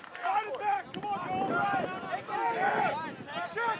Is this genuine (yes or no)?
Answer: yes